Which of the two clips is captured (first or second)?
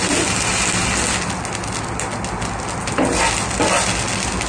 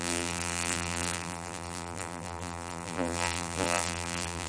first